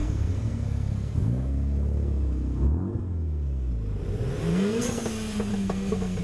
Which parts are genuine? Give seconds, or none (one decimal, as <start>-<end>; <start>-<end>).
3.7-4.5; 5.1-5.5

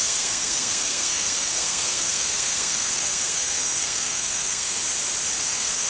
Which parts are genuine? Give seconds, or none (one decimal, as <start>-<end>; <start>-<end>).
4.8-5.4

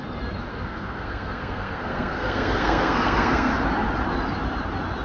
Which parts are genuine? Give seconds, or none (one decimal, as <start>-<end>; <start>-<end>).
0.0-0.5; 3.5-5.0

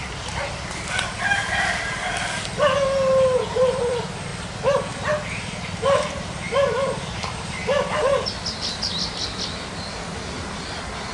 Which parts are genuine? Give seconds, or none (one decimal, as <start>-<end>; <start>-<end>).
0.0-11.1